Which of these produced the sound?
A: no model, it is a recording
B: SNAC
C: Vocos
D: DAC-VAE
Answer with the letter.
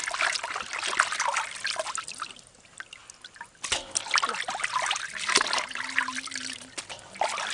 A